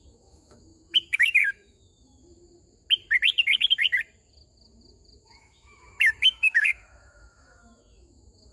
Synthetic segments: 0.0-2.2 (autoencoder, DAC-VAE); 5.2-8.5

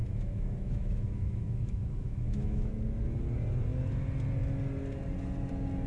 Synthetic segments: 0.0-2.7 (autoencoder, DAC-VAE)

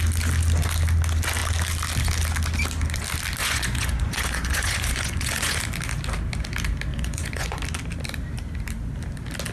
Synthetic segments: 3.4-5.6 (vocoder, Vocos); 6.9-7.6

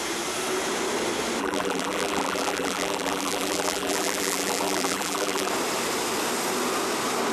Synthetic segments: 1.4-5.5 (vocoder, BigVGAN v2)

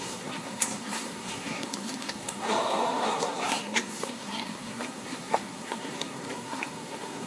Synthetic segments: 0.0-7.3 (codec, SNAC)